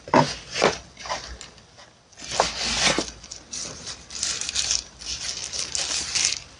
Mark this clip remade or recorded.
recorded